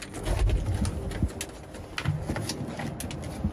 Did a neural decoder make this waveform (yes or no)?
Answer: no